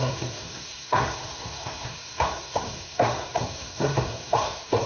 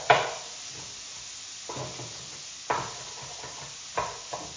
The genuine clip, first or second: second